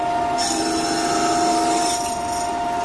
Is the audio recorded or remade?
recorded